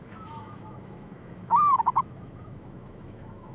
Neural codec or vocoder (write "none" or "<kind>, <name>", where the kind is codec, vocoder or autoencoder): autoencoder, DAC-VAE